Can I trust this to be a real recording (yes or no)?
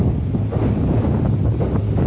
yes